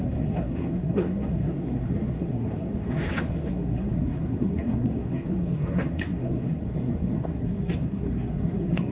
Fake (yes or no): yes